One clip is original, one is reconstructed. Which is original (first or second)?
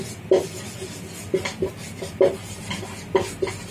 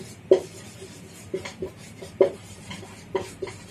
first